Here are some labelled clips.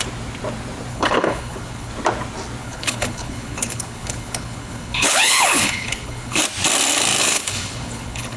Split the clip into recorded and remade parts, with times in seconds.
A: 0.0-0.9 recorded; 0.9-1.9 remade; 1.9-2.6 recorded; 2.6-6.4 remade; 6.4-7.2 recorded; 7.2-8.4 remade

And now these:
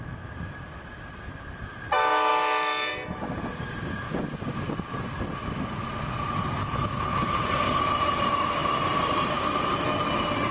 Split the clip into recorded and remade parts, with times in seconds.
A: 0.0-6.6 recorded; 6.6-7.8 remade; 7.8-10.5 recorded

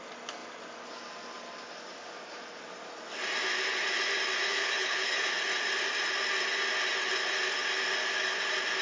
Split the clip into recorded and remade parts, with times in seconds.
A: 0.0-4.5 recorded; 4.5-5.3 remade; 5.3-8.8 recorded

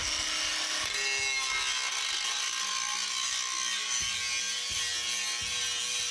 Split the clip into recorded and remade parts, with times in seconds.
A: 0.0-6.1 recorded

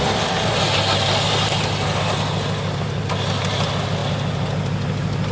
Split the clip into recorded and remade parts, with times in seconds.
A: 0.0-5.3 recorded

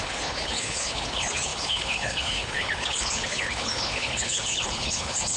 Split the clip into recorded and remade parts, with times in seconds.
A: 0.0-5.4 remade

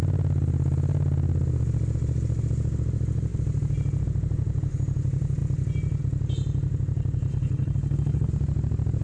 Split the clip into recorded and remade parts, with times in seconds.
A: 0.0-7.3 recorded; 7.3-8.3 remade; 8.3-9.0 recorded

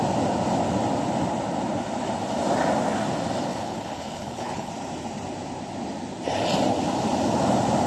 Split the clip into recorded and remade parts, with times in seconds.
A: 0.0-3.5 recorded; 3.5-4.7 remade; 4.7-7.9 recorded